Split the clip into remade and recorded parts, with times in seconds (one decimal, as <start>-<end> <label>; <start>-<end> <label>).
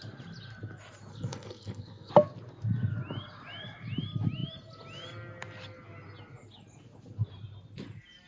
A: 0.0-1.1 recorded; 1.1-2.1 remade; 2.1-8.3 recorded